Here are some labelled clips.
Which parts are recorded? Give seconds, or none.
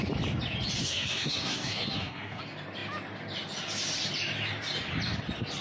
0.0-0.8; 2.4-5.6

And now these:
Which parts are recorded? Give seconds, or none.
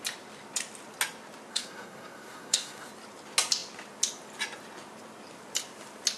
0.0-1.5; 2.9-6.2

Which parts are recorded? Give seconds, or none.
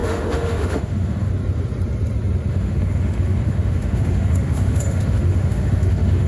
1.3-2.5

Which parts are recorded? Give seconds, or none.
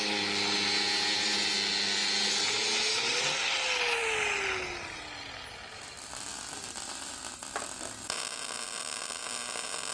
0.0-9.9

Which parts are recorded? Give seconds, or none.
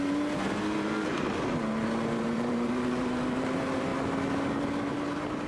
1.6-2.2; 3.9-4.9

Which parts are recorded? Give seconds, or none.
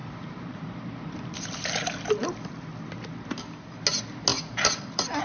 2.1-4.3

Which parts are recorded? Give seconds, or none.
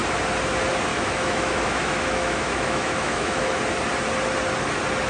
0.0-0.9; 3.6-5.1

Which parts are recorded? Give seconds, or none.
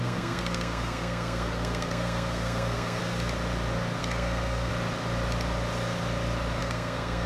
3.0-4.0; 4.7-6.6